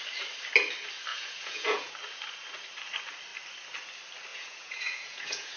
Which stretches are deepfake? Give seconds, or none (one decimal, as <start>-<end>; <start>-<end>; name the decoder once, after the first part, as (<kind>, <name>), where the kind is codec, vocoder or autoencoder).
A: 1.1-1.9 (vocoder, Vocos); 4.3-5.6